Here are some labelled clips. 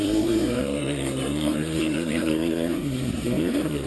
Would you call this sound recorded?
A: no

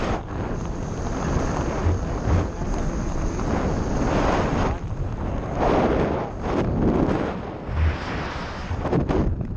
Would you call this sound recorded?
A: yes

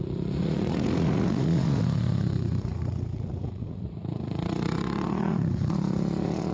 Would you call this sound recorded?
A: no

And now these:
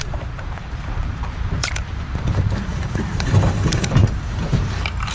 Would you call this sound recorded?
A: no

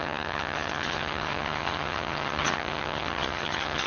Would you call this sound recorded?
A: no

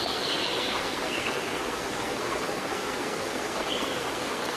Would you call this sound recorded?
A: no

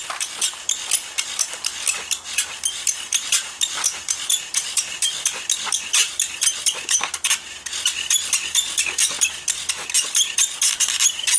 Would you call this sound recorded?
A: yes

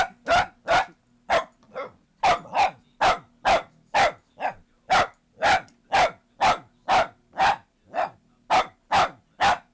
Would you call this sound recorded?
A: yes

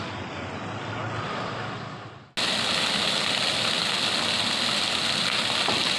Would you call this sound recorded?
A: yes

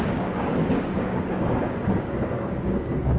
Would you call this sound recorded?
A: no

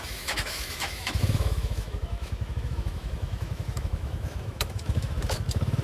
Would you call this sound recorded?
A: no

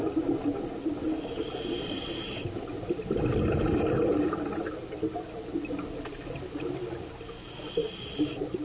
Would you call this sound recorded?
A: yes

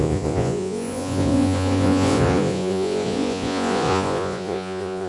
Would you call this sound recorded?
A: no